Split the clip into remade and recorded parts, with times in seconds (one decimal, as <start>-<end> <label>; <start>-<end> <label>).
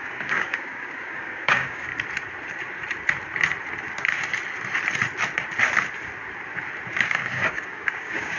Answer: 0.0-1.9 remade; 1.9-6.9 recorded; 6.9-8.4 remade